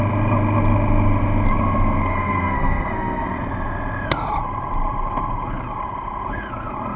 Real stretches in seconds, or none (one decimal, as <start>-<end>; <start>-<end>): 0.0-2.1; 3.2-7.0